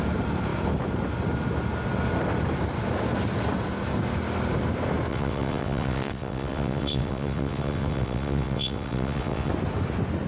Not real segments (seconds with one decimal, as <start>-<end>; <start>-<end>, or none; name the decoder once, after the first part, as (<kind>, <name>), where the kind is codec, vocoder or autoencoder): 5.1-9.5 (vocoder, WaveNeXt)